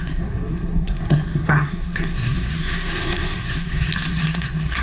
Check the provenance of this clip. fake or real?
fake